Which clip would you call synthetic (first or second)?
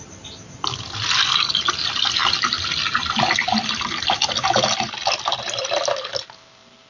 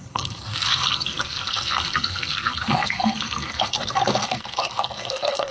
second